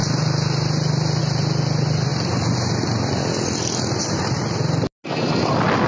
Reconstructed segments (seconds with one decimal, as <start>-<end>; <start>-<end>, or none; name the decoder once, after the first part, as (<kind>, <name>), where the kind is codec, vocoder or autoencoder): none